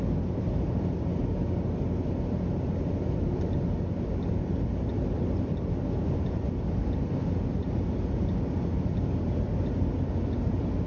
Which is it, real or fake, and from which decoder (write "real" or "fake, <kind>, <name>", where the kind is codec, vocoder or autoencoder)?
real